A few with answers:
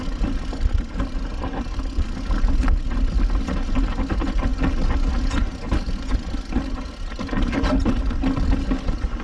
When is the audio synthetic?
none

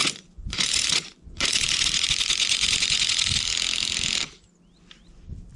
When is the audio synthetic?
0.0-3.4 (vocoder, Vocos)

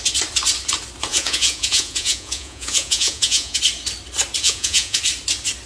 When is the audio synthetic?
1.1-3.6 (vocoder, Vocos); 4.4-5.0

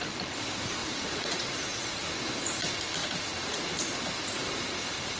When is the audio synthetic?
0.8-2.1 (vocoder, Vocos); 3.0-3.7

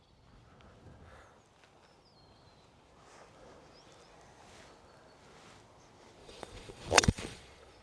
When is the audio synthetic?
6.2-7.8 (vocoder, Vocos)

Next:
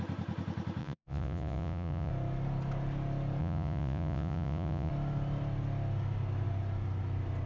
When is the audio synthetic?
0.8-2.1 (vocoder, Vocos); 3.4-4.9

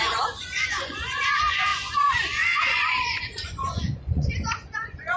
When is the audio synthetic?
0.0-5.2 (vocoder, Vocos)